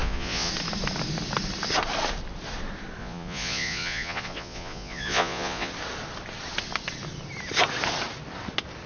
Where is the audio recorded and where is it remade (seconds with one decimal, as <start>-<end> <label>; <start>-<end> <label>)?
0.0-0.5 remade; 0.5-3.0 recorded; 3.0-5.7 remade; 5.7-8.9 recorded